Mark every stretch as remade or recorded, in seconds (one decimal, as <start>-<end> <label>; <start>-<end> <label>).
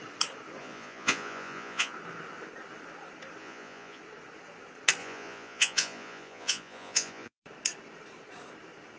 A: 0.0-0.6 recorded; 0.6-1.9 remade; 1.9-3.4 recorded; 3.4-4.0 remade; 4.0-5.0 recorded; 5.0-7.4 remade; 7.4-9.0 recorded